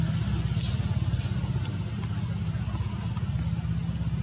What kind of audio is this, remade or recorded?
recorded